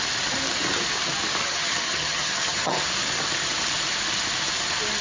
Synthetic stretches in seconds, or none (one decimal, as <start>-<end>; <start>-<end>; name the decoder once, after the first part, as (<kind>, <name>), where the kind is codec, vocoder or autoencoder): 1.4-2.9 (vocoder, HiFi-GAN)